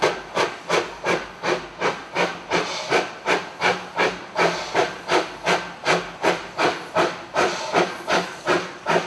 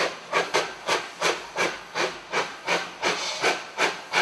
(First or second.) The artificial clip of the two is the second